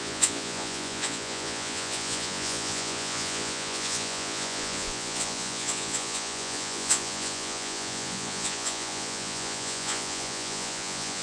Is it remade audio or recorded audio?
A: remade